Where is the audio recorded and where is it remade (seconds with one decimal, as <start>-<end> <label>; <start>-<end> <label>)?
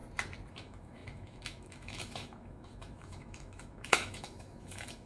0.0-0.5 recorded; 0.5-5.1 remade